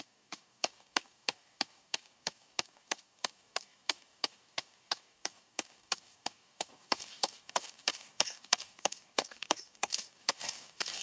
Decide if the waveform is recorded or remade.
remade